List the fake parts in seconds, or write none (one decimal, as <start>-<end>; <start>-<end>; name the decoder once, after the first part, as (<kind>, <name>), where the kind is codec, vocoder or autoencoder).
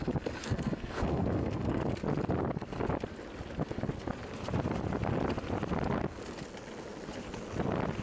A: 0.4-1.8 (codec, SNAC)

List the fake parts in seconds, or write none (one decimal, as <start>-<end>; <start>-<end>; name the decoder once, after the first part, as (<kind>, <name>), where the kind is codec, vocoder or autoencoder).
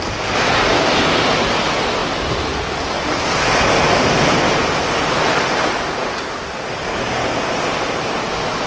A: none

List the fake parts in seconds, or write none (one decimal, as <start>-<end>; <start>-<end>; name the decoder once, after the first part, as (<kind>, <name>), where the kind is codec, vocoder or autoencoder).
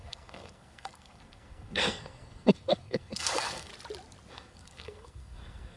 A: 0.0-3.7 (codec, SNAC); 4.3-5.8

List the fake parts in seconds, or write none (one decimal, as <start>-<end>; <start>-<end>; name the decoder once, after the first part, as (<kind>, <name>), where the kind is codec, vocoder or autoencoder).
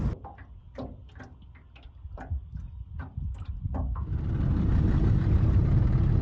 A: none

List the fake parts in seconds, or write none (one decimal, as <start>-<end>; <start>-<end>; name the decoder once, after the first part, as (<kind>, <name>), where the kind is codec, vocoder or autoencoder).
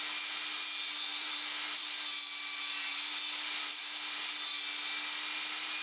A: 1.1-4.6 (vocoder, BigVGAN v2)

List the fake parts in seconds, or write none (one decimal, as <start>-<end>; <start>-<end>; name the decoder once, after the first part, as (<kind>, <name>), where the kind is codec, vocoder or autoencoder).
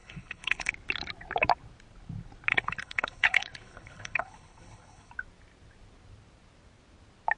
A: 0.0-0.7 (codec, HILCodec); 2.5-5.1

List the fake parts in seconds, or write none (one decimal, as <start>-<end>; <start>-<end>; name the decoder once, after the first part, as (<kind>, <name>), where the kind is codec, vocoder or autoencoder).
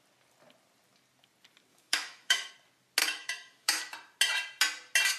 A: 1.7-2.5 (autoencoder, DAC-VAE); 3.0-3.8